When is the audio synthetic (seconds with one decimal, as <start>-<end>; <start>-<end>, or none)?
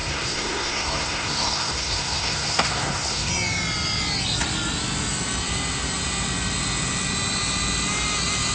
0.0-3.3